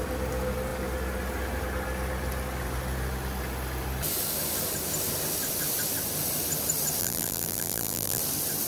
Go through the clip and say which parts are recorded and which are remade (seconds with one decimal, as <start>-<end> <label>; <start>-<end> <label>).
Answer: 0.0-7.0 recorded; 7.0-8.2 remade; 8.2-8.7 recorded